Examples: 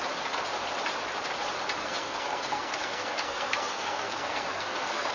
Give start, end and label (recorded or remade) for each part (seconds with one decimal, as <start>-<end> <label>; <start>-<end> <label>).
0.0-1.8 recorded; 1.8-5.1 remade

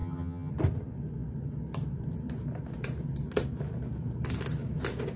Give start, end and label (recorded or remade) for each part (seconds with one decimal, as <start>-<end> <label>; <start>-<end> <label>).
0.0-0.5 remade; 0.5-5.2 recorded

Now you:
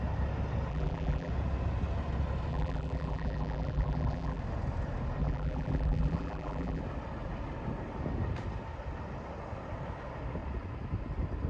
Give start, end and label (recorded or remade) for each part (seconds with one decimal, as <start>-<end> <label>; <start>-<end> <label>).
0.0-0.7 recorded; 0.7-1.3 remade; 1.3-2.5 recorded; 2.5-4.4 remade; 4.4-5.2 recorded; 5.2-6.8 remade; 6.8-11.5 recorded

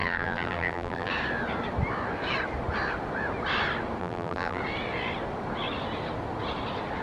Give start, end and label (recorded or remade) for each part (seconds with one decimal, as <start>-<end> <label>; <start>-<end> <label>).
0.0-1.1 remade; 1.1-4.0 recorded; 4.0-4.6 remade; 4.6-7.0 recorded